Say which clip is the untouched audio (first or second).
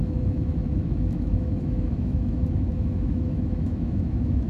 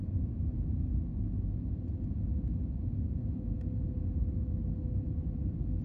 second